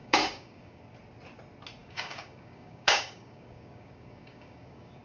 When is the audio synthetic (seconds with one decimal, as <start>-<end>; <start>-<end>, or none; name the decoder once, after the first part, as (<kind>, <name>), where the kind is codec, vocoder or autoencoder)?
0.0-0.8 (codec, DAC); 1.8-5.0